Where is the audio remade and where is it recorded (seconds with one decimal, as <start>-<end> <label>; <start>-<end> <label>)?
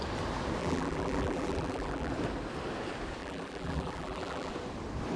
0.0-0.6 recorded; 0.6-2.1 remade; 2.1-3.2 recorded; 3.2-4.5 remade; 4.5-5.2 recorded